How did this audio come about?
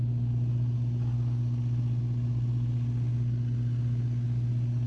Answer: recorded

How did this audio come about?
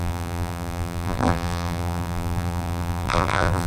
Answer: remade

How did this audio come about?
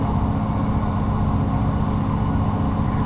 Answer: recorded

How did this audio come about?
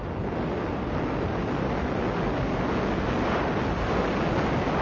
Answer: recorded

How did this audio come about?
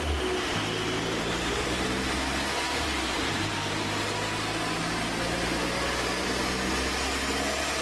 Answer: recorded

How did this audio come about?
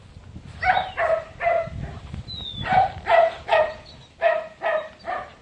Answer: recorded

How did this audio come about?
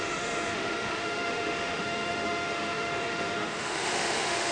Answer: remade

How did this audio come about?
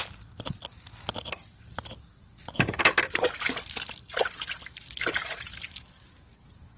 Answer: recorded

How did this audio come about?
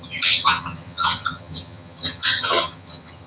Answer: remade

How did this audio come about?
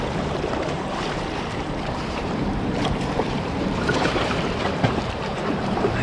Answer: remade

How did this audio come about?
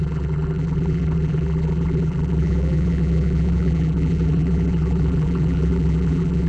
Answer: remade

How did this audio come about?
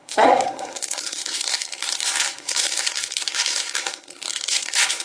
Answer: remade